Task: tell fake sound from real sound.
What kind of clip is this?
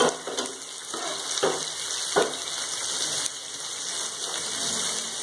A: real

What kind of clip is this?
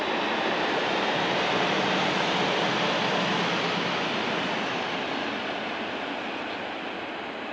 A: real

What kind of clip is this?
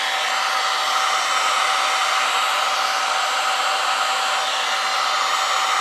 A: real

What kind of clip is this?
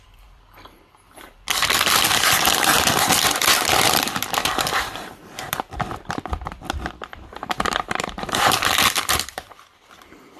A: fake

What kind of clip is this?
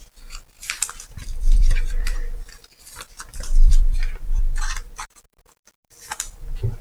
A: fake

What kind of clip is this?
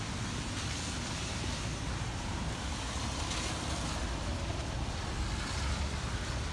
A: real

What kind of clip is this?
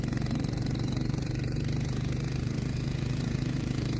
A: fake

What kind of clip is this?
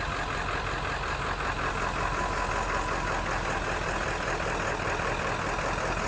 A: real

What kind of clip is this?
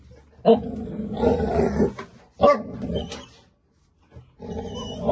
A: real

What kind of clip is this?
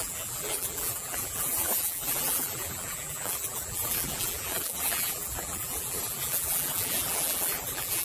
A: fake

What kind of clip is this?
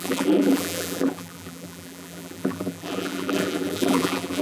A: fake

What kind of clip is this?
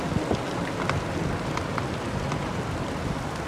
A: real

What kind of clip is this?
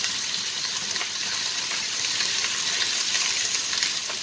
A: fake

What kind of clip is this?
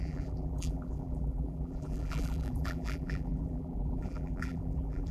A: fake